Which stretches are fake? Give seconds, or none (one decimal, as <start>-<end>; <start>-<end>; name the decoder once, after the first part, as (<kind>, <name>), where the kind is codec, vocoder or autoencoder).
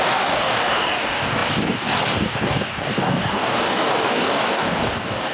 0.0-5.3 (codec, DAC)